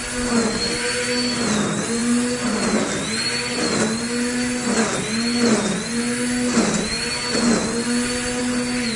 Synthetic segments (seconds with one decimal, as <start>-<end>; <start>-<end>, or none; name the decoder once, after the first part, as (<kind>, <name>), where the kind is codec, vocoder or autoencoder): none

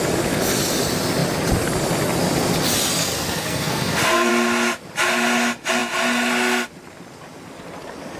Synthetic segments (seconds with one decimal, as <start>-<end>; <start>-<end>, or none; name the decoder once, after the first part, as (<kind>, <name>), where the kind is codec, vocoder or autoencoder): 3.0-4.3 (codec, SNAC)

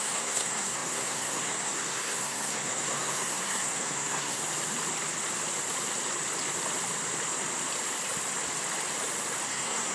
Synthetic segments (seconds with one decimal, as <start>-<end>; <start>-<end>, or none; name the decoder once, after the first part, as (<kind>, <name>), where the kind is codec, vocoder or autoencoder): 0.0-4.4 (codec, SNAC); 9.5-9.9

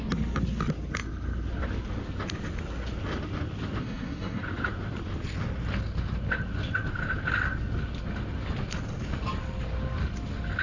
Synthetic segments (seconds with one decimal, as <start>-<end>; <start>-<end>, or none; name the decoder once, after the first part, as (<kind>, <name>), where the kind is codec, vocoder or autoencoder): 3.8-4.4 (codec, SNAC)

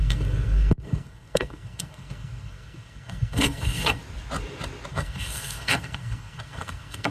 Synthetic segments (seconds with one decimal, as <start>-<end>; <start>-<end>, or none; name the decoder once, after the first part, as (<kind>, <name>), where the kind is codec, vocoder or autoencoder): 0.0-4.0 (codec, SNAC); 4.9-7.1

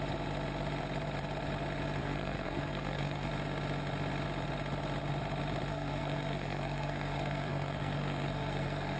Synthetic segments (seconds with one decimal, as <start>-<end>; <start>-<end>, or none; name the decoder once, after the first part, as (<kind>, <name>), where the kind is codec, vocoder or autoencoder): 2.0-3.3 (codec, SNAC); 5.7-9.0